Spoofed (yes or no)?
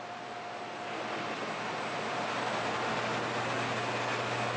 no